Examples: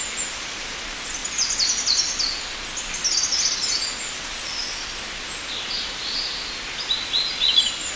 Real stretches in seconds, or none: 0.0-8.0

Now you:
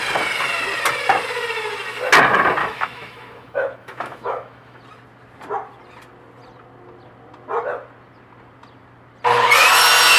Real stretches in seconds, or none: 0.0-2.6; 4.8-10.2

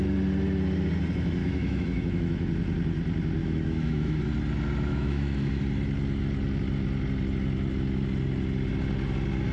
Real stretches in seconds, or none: 0.0-1.4; 2.5-3.4; 4.2-4.9; 5.5-9.5